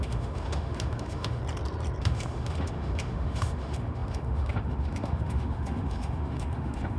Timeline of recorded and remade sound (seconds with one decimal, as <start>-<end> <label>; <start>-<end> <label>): 0.0-1.4 remade; 1.4-2.0 recorded; 2.0-7.0 remade